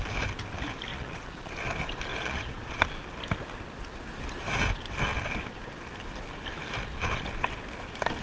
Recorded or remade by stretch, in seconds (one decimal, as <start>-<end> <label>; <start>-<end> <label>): 0.0-0.9 recorded; 0.9-1.5 remade; 1.5-2.1 recorded; 2.1-2.8 remade; 2.8-8.2 recorded